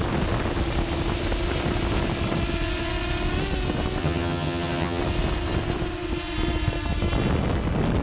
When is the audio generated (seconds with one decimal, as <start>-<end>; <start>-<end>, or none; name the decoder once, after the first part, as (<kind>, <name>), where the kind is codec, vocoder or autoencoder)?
4.0-5.0 (vocoder, HiFi-GAN)